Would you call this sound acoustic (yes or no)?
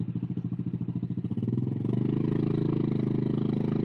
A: yes